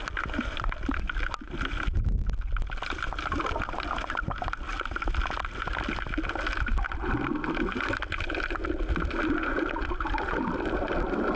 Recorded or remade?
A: recorded